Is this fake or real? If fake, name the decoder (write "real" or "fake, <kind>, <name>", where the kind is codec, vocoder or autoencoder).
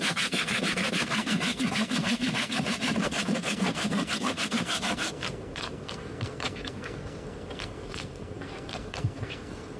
fake, codec, SNAC